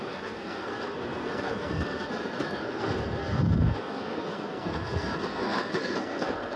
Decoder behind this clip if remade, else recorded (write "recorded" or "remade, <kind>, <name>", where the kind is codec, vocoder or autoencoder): remade, codec, SNAC